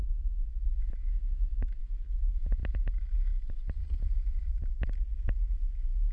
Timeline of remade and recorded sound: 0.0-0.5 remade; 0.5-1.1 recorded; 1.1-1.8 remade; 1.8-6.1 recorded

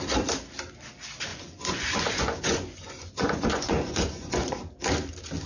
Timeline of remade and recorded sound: 0.0-1.3 recorded; 1.3-4.6 remade; 4.6-5.5 recorded

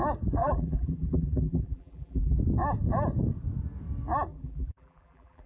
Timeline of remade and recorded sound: 0.0-0.4 recorded; 0.4-2.4 remade; 2.4-4.3 recorded; 4.3-5.5 remade